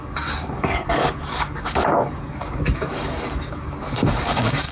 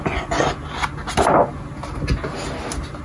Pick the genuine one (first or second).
second